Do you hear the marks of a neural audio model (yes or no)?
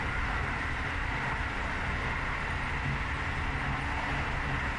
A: no